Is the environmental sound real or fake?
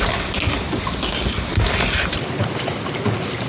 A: real